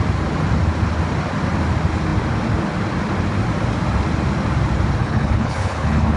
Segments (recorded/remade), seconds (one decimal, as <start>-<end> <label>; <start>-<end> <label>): 0.0-5.0 recorded; 5.0-6.2 remade